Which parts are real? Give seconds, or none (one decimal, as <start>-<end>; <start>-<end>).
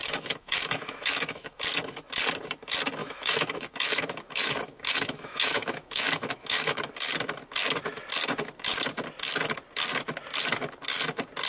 1.6-3.0; 6.9-11.5